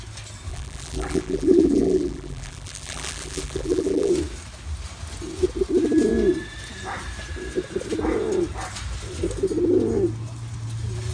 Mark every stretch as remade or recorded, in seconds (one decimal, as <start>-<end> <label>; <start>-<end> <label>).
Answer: 0.0-0.5 recorded; 0.5-4.1 remade; 4.1-11.1 recorded